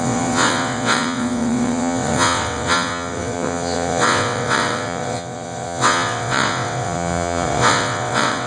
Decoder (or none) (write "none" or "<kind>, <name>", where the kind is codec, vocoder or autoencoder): vocoder, WaveNeXt